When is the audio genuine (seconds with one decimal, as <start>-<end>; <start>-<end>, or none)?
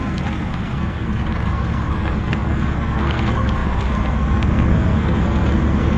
none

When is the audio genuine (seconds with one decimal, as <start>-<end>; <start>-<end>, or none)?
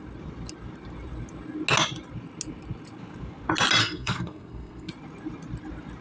0.0-3.8; 4.9-6.0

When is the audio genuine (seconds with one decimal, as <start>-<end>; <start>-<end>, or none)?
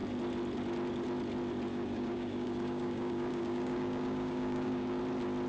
0.0-1.7; 5.0-5.5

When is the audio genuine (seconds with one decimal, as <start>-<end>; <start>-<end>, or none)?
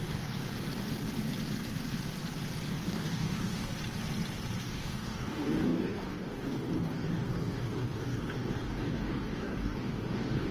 0.4-2.7; 3.7-4.6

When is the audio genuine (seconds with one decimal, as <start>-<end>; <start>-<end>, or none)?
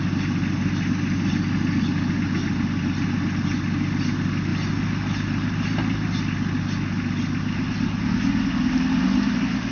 0.0-9.7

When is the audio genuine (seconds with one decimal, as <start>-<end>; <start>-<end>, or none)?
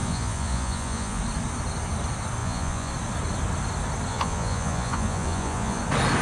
1.2-2.4; 2.9-4.1; 5.8-6.2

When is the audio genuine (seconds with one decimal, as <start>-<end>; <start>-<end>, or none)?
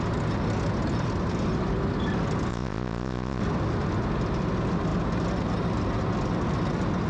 0.0-2.5; 3.4-7.1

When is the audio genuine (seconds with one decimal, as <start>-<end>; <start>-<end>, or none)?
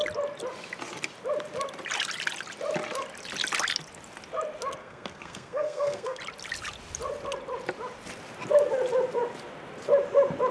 0.0-4.8; 6.2-10.5